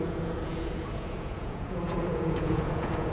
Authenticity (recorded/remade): remade